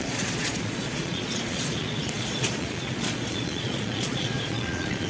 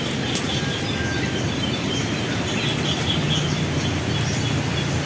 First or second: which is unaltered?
second